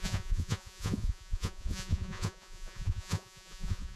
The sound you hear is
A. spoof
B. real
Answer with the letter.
A